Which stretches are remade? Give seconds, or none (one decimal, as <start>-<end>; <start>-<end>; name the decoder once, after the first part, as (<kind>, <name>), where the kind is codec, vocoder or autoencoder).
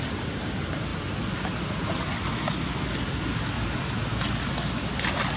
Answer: none